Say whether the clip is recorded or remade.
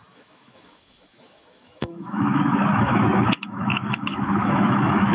remade